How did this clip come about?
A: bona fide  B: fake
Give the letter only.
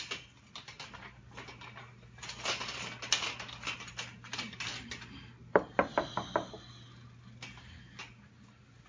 A